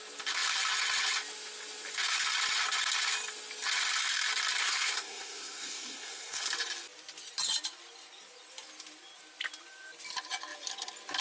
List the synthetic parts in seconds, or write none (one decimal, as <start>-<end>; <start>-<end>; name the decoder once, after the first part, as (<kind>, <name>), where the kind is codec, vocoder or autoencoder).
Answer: 4.6-6.5 (codec, SNAC)